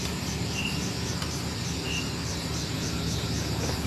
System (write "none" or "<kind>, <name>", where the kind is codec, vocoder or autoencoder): none